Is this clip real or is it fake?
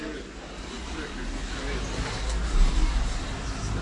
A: real